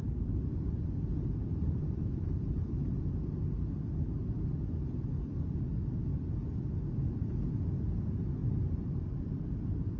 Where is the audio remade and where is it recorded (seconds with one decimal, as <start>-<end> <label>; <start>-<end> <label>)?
0.0-2.9 remade; 2.9-8.4 recorded; 8.4-9.4 remade; 9.4-10.0 recorded

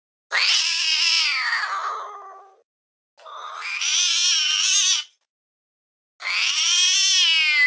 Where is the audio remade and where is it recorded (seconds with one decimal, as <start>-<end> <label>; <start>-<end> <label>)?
0.0-7.7 recorded

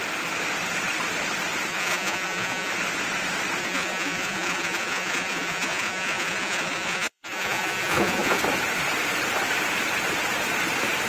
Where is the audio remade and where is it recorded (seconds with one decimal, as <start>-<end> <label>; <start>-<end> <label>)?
0.0-1.7 recorded; 1.7-2.7 remade; 2.7-3.6 recorded; 3.6-8.4 remade; 8.4-11.1 recorded